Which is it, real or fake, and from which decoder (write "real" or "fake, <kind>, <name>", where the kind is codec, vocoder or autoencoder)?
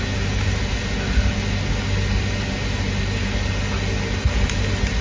real